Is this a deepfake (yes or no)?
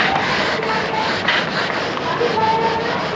no